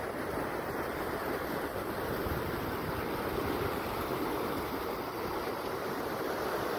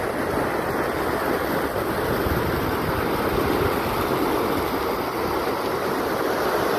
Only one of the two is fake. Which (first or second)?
first